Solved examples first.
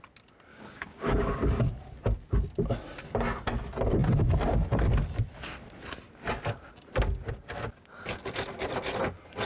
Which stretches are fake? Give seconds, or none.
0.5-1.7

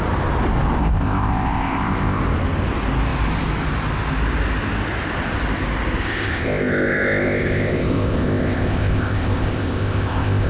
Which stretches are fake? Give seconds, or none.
0.8-2.2; 6.0-10.5

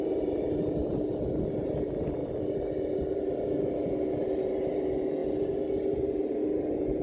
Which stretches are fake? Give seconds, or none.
none

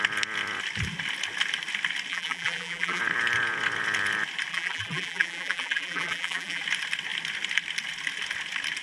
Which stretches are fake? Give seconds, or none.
2.1-3.0; 4.5-6.6

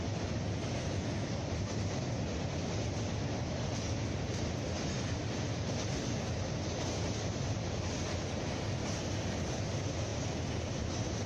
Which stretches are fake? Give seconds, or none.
none

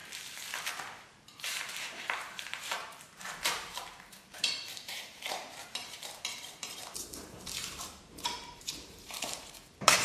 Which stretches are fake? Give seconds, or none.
1.1-10.0

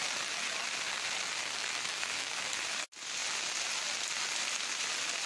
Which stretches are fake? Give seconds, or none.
1.6-2.4